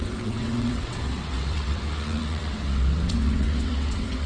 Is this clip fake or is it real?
fake